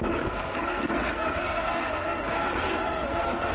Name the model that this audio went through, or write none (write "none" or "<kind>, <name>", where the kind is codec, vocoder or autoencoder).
codec, SNAC